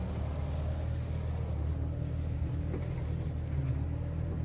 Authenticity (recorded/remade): recorded